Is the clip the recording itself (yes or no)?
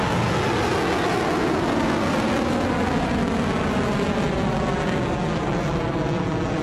yes